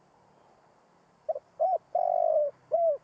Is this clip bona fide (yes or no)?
no